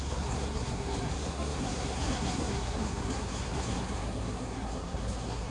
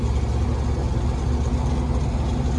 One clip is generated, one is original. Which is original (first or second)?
second